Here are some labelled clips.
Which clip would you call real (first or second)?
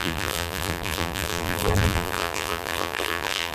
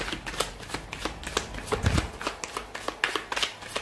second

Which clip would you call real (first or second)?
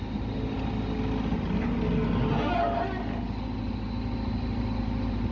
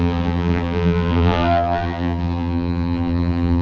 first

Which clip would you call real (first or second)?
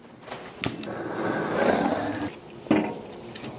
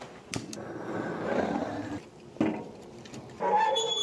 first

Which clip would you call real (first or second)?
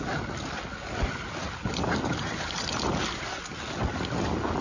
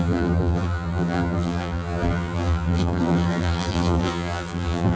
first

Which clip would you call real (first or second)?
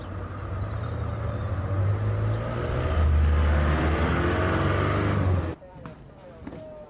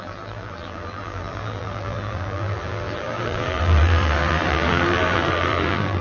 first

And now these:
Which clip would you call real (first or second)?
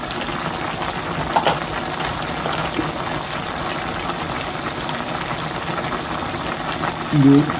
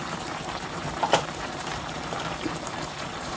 first